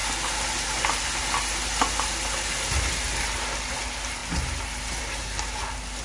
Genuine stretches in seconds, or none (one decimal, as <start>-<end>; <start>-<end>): 0.0-6.0